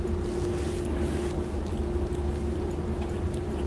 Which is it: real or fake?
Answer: real